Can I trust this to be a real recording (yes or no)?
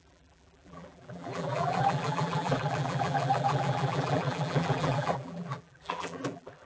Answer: no